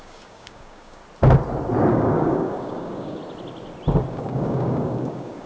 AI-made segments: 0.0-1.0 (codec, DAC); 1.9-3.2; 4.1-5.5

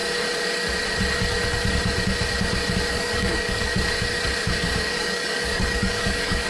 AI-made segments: 2.9-3.7 (codec, DAC); 4.8-6.5

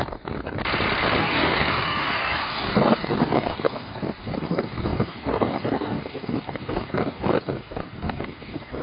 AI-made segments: 0.0-0.6 (codec, DAC); 1.2-8.8

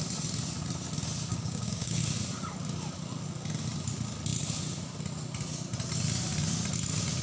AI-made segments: 1.3-2.0 (codec, DAC)

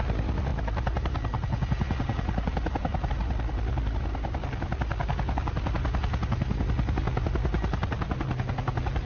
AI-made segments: none

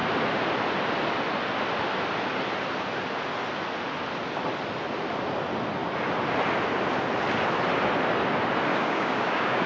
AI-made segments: 8.7-9.7 (codec, DAC)

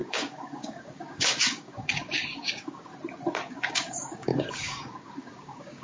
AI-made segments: 0.0-2.9 (codec, DAC); 3.4-5.8

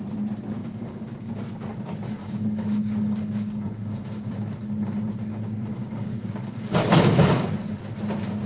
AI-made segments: 0.6-1.3 (codec, DAC); 2.2-4.3; 5.7-7.5